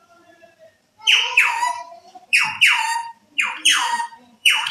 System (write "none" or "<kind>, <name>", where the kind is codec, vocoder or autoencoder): vocoder, BigVGAN v2